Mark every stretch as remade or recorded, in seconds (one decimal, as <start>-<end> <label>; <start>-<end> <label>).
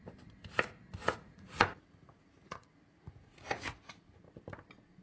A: 0.0-1.0 recorded; 1.0-4.0 remade; 4.0-5.0 recorded